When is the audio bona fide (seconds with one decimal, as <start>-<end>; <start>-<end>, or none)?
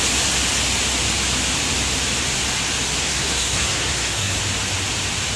0.0-3.0; 4.4-5.4